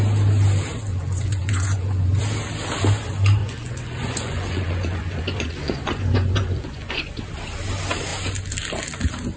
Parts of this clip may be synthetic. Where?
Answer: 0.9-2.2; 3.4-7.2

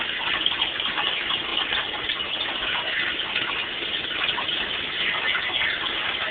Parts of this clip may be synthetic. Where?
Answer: none

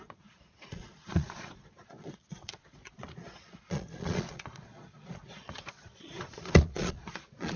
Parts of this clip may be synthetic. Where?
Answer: 0.0-7.6

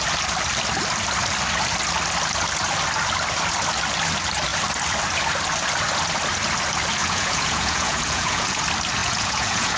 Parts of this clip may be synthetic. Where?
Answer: 7.0-8.6; 9.0-9.8

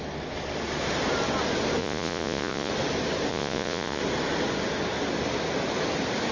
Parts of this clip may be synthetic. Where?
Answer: 1.8-2.7; 3.3-4.0